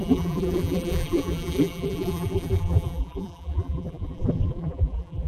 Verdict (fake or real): fake